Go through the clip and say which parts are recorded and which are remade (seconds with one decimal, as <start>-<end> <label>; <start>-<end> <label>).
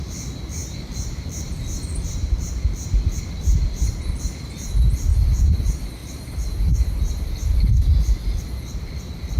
0.0-9.4 recorded